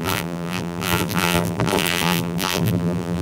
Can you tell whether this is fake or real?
fake